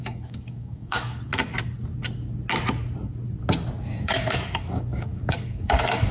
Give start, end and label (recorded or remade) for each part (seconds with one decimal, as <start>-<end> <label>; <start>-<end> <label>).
0.0-1.3 remade; 1.3-3.8 recorded; 3.8-6.1 remade